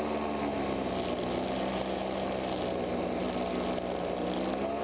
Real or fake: real